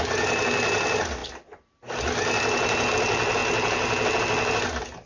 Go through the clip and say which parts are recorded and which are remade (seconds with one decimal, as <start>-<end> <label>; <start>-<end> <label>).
0.0-5.1 recorded